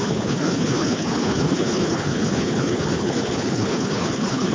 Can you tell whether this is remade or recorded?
remade